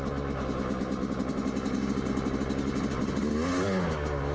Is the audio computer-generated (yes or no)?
no